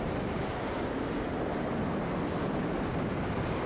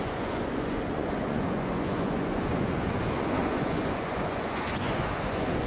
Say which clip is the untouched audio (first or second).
first